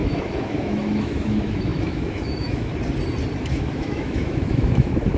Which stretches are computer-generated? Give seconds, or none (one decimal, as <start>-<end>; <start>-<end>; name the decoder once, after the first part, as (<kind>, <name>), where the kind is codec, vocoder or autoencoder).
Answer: 0.0-2.7 (autoencoder, DAC-VAE); 3.4-5.2